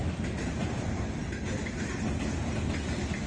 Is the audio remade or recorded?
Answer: recorded